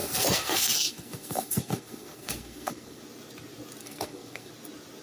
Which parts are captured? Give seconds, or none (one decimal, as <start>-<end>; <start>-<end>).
3.0-3.8; 4.5-5.0